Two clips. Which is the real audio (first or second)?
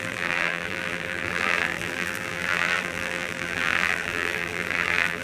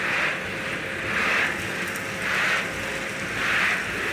second